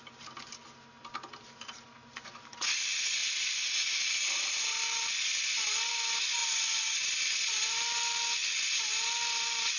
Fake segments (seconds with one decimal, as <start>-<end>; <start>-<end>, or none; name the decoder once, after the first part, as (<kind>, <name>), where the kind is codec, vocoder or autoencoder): none